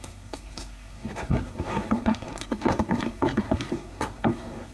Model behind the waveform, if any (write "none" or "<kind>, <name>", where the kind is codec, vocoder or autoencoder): codec, SNAC